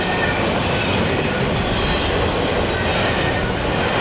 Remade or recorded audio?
recorded